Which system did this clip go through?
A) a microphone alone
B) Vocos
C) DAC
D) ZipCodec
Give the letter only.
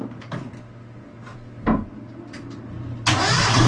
A